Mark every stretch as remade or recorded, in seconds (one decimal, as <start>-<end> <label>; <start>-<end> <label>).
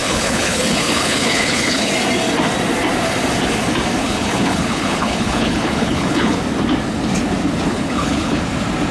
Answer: 0.0-1.9 remade; 1.9-4.0 recorded; 4.0-6.4 remade; 6.4-7.7 recorded; 7.7-8.4 remade; 8.4-8.9 recorded